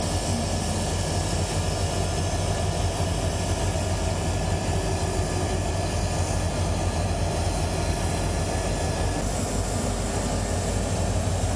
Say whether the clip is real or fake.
real